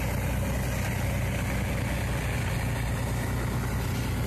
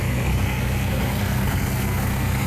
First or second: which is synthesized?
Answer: second